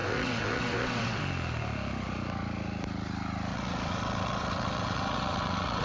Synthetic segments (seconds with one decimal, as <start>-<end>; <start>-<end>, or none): 0.0-1.2; 3.5-5.8